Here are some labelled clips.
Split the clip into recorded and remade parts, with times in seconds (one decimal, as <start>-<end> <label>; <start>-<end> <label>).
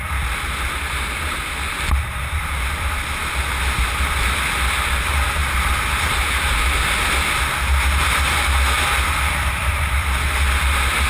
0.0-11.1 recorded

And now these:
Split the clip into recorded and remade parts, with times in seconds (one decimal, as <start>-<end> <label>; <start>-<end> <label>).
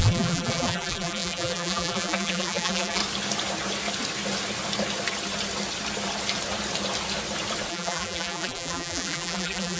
0.0-3.0 remade; 3.0-7.7 recorded; 7.7-9.8 remade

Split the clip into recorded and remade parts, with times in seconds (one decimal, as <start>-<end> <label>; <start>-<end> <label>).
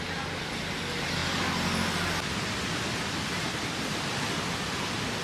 0.0-5.2 recorded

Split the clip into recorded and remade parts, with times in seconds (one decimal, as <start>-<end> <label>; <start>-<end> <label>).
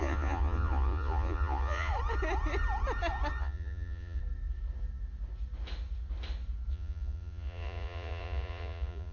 0.0-1.9 remade; 1.9-3.4 recorded; 3.4-4.2 remade; 4.2-6.7 recorded; 6.7-9.1 remade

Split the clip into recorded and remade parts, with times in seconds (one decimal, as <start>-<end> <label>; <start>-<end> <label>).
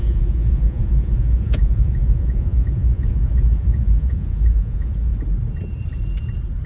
0.0-5.1 remade; 5.1-6.7 recorded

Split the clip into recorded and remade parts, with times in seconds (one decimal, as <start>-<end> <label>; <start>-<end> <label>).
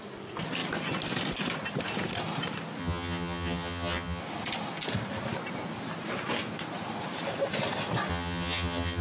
0.0-2.8 recorded; 2.8-4.2 remade; 4.2-8.1 recorded; 8.1-9.0 remade